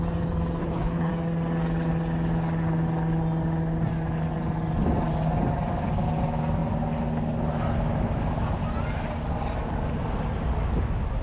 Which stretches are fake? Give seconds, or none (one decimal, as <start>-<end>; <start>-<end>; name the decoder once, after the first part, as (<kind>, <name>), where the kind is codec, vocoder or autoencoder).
0.6-1.1 (codec, HILCodec)